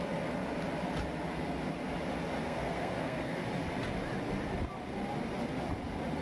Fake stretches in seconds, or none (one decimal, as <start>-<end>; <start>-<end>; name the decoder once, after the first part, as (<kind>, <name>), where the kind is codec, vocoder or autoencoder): 2.4-3.4 (codec, SNAC)